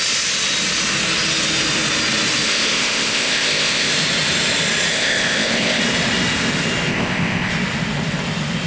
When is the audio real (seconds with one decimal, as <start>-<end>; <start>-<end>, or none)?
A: 0.0-2.5; 3.9-4.9; 5.8-6.9; 7.5-8.7